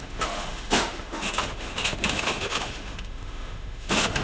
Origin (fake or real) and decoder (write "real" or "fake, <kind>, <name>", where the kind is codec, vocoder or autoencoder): fake, autoencoder, DAC-VAE